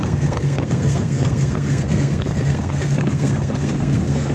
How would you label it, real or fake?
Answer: fake